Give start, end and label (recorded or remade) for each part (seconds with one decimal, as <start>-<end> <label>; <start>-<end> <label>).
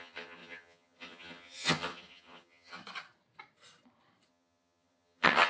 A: 0.0-2.8 remade; 2.8-4.3 recorded; 4.3-5.5 remade